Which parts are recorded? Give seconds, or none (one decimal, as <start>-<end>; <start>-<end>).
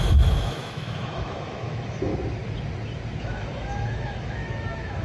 2.1-3.2